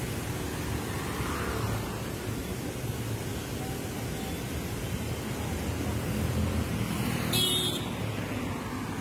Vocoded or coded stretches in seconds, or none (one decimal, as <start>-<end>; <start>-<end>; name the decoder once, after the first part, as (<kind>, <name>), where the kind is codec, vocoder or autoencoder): none